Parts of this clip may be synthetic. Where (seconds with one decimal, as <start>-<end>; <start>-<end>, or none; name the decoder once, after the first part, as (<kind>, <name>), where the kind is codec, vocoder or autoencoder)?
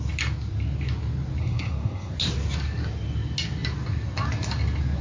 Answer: 1.4-2.1 (codec, SNAC)